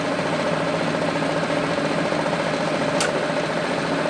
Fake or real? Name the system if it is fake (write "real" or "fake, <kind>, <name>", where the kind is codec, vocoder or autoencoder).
real